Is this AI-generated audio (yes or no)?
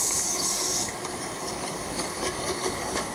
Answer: yes